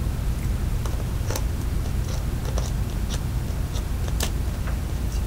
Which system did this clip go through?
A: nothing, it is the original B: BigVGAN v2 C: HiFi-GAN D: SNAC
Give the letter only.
A